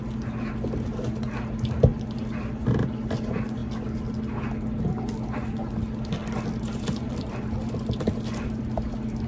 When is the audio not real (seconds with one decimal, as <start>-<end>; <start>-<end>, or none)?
1.9-2.6; 6.2-8.6